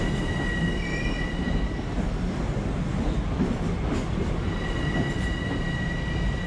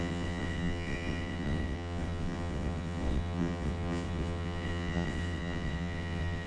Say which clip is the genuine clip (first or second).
first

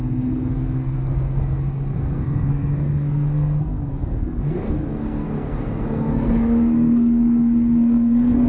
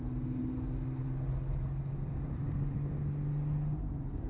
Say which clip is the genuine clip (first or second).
second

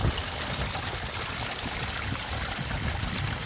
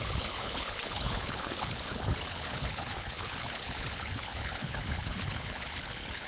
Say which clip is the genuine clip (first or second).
first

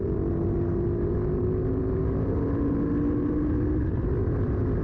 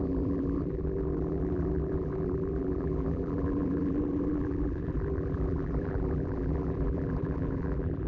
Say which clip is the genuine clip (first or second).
first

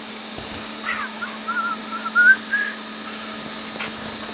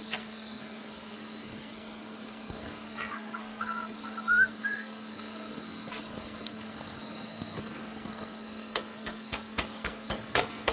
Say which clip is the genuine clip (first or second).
first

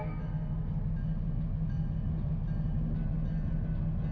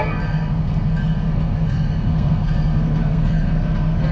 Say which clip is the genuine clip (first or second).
first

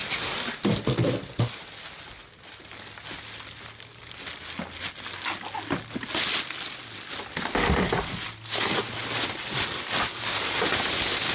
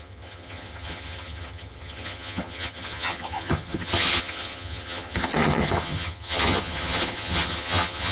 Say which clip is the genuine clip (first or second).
first